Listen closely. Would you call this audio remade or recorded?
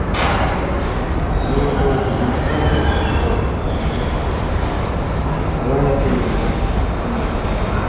recorded